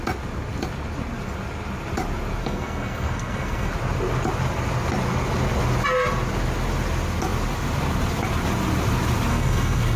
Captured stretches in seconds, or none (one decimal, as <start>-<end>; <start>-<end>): 0.0-2.4; 3.7-9.3